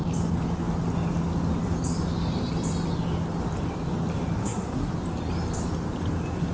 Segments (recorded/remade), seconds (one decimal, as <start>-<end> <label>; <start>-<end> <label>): 0.0-4.4 recorded; 4.4-4.9 remade; 4.9-6.5 recorded